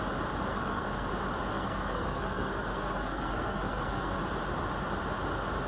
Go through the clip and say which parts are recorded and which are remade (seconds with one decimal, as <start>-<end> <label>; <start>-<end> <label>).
0.0-0.5 recorded; 0.5-1.1 remade; 1.1-1.5 recorded; 1.5-4.2 remade; 4.2-5.7 recorded

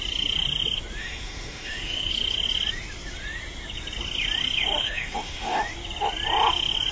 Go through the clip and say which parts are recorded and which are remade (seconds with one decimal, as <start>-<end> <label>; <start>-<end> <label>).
0.0-1.0 recorded; 1.0-2.1 remade; 2.1-4.8 recorded; 4.8-5.6 remade; 5.6-6.9 recorded